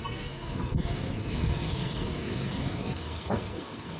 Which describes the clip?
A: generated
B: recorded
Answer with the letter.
A